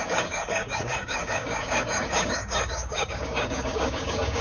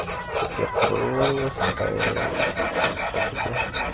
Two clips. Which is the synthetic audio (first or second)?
first